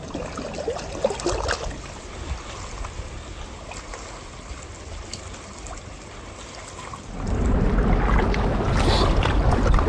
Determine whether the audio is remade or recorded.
recorded